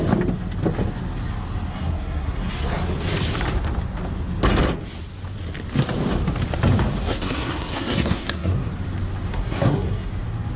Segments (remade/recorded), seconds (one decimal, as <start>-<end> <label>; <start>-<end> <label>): 0.0-1.7 recorded; 1.7-2.5 remade; 2.5-7.0 recorded; 7.0-8.7 remade; 8.7-9.3 recorded; 9.3-10.1 remade; 10.1-10.6 recorded